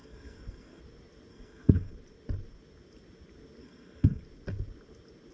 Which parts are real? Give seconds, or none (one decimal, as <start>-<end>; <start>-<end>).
0.8-1.3; 1.9-3.6; 4.2-5.3